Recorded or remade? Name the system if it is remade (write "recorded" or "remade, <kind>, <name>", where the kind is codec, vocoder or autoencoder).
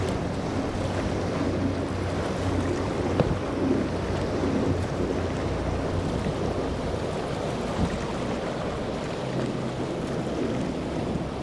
recorded